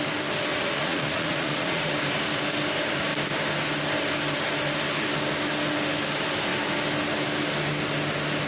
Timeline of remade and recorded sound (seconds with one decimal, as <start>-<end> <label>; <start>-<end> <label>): 0.0-0.5 recorded; 0.5-1.9 remade; 1.9-8.5 recorded